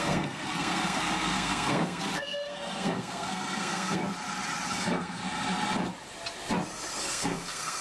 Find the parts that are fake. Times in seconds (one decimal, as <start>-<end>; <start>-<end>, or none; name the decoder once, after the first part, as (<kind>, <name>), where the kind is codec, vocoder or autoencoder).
0.0-4.0 (codec, SNAC); 4.7-5.2; 7.0-7.8